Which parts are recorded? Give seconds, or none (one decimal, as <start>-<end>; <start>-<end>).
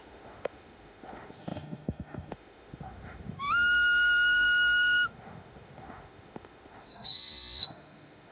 none